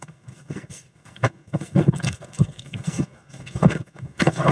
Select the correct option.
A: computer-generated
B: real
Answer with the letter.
A